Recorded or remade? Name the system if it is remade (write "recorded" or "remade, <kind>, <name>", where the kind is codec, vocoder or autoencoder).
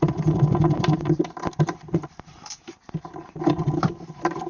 remade, vocoder, BigVGAN v2